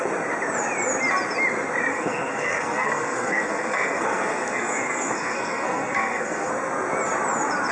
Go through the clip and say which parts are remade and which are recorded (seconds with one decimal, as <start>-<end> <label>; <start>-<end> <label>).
0.0-1.9 recorded; 1.9-6.5 remade; 6.5-7.7 recorded